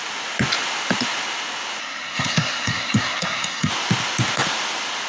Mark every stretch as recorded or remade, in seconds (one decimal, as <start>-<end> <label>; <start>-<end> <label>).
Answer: 0.0-1.8 recorded; 1.8-3.7 remade; 3.7-5.1 recorded